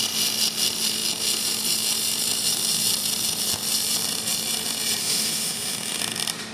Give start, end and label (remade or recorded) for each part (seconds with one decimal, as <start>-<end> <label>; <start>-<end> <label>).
0.0-5.0 recorded; 5.0-6.0 remade; 6.0-6.5 recorded

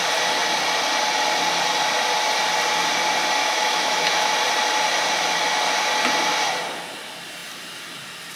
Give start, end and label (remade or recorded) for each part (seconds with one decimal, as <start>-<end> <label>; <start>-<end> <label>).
0.0-3.4 recorded; 3.4-4.3 remade; 4.3-8.4 recorded